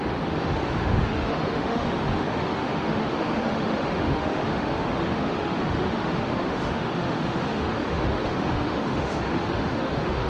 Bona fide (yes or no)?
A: no